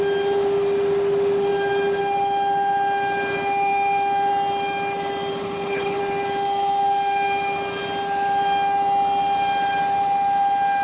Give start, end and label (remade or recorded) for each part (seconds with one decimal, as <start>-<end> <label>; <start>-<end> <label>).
0.0-5.3 recorded; 5.3-6.0 remade; 6.0-10.8 recorded